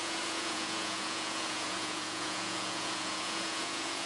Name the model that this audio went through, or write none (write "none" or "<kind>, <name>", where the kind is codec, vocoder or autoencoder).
vocoder, Vocos